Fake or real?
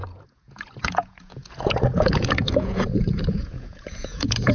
fake